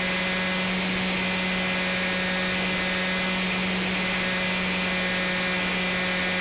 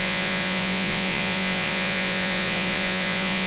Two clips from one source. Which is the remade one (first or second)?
second